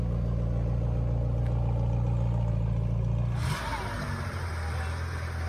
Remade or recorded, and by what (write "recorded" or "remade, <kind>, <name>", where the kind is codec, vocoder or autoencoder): recorded